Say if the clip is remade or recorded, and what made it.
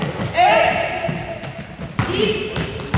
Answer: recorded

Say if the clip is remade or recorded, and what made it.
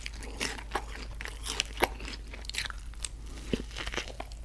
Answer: recorded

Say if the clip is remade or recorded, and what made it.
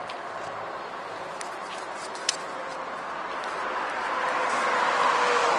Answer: recorded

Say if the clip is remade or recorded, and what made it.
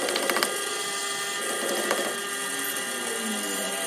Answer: recorded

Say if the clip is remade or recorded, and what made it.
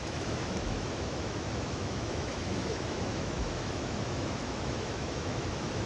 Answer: remade, autoencoder, DAC-VAE